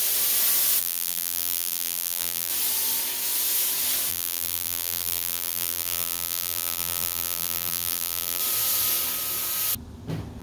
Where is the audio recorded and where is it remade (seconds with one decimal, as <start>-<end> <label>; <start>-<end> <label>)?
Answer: 0.0-0.8 recorded; 0.8-2.5 remade; 2.5-4.1 recorded; 4.1-8.4 remade; 8.4-10.4 recorded